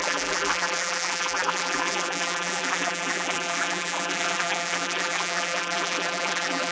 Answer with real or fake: fake